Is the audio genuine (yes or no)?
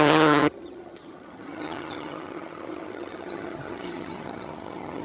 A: no